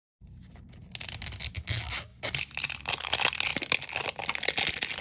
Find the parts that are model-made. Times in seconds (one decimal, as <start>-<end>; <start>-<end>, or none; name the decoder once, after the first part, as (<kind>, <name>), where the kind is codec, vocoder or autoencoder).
none